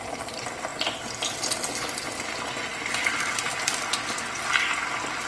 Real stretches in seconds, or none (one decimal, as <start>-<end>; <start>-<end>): 0.0-5.3